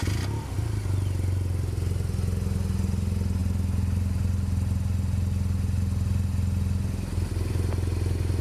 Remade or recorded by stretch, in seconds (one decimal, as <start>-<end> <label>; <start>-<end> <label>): 0.0-8.4 recorded